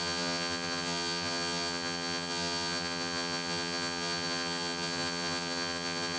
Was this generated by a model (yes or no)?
yes